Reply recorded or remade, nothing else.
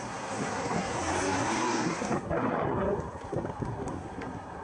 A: remade